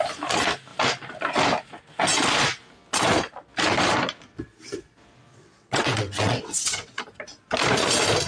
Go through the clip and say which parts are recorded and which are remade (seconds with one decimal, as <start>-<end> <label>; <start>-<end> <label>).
0.0-5.3 recorded; 5.3-7.0 remade; 7.0-8.3 recorded